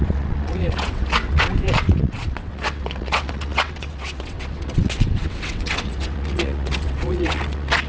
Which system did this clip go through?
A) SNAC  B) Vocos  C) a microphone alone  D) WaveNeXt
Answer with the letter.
D